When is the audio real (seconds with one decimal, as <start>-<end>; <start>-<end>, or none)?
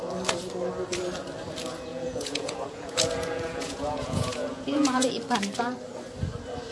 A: 0.0-1.9; 5.1-6.7